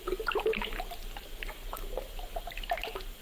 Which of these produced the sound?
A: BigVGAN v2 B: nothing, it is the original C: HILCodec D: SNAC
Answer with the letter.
B